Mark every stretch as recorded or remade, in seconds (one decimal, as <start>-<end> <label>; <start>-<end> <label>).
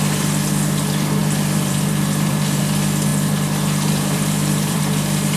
0.0-1.2 recorded; 1.2-2.6 remade; 2.6-3.1 recorded; 3.1-4.8 remade; 4.8-5.4 recorded